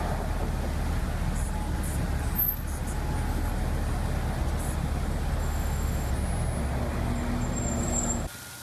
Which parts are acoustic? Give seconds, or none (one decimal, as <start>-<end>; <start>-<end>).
0.0-5.4; 6.1-8.6